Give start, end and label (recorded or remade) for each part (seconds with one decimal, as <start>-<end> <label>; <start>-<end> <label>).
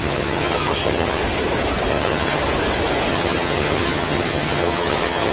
0.0-1.2 remade; 1.2-1.9 recorded; 1.9-2.4 remade; 2.4-3.1 recorded; 3.1-5.3 remade